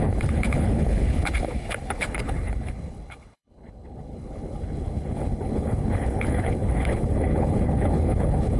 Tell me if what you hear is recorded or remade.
remade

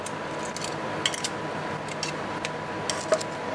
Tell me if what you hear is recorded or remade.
recorded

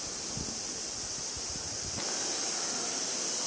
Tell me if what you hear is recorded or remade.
recorded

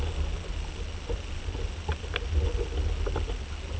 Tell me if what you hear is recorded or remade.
recorded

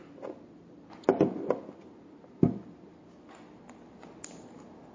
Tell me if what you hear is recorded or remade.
recorded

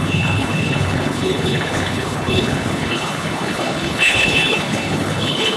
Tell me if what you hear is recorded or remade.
remade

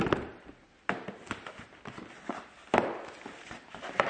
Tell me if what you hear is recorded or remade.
recorded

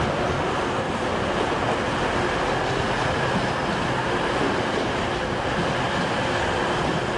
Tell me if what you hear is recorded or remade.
recorded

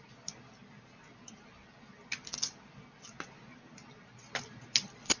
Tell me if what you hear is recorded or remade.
recorded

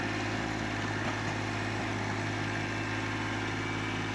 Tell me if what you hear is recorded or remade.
recorded